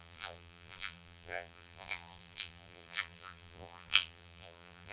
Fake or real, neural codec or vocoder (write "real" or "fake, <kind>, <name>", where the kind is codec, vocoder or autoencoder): fake, vocoder, BigVGAN v2